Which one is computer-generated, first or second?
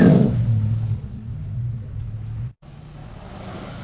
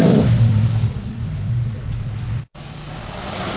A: second